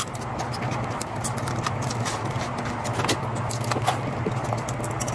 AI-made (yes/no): no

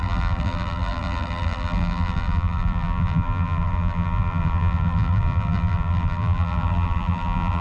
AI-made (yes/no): yes